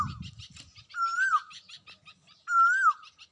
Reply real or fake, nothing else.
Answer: real